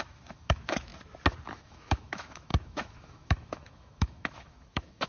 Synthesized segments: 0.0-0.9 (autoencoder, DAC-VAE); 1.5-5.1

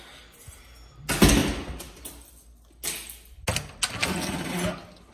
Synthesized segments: none

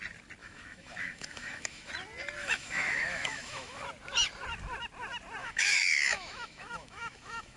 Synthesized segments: 0.4-1.9 (autoencoder, DAC-VAE); 2.4-3.8; 5.4-7.6

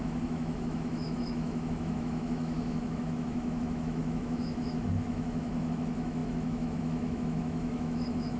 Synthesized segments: 0.0-8.4 (autoencoder, DAC-VAE)

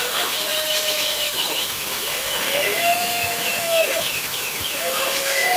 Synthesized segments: 0.0-5.6 (autoencoder, DAC-VAE)